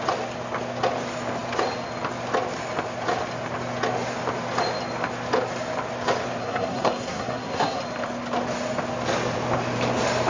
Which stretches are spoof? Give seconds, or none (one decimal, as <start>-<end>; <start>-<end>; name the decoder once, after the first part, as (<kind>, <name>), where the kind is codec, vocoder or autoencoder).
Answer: 6.4-7.8 (codec, SNAC)